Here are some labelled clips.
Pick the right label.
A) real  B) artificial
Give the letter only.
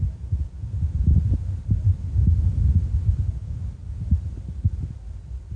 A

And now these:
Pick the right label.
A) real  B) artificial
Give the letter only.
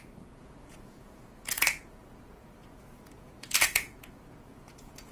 B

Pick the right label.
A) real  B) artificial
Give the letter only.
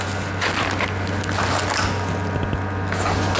A